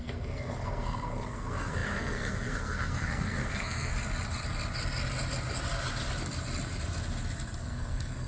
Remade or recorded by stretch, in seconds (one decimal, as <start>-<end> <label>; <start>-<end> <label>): 0.0-3.9 remade; 3.9-7.6 recorded; 7.6-8.3 remade